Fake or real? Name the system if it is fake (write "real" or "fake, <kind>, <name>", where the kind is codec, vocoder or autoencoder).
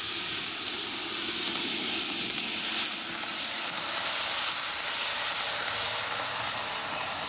real